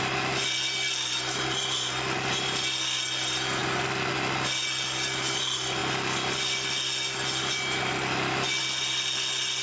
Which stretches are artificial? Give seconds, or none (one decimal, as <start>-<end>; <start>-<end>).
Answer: none